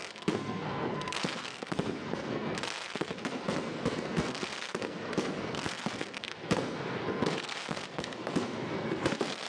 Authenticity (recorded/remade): remade